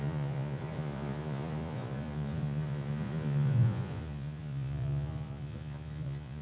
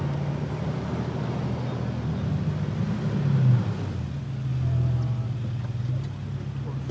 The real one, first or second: second